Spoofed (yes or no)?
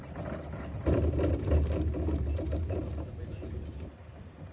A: no